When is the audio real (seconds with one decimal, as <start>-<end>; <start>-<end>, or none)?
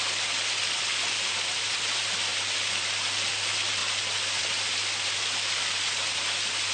0.0-6.7